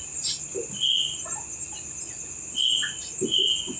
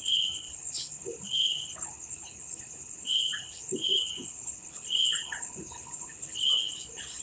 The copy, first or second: second